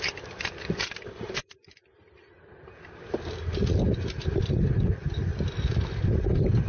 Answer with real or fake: real